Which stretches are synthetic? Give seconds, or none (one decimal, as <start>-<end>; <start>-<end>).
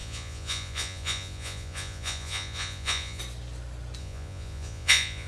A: 0.0-3.2; 4.0-5.3